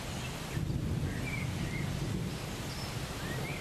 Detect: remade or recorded recorded